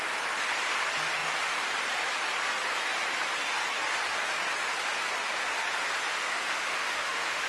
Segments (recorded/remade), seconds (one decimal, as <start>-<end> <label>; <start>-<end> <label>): 0.0-6.2 recorded; 6.2-7.5 remade